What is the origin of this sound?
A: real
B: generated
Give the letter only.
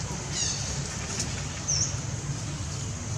B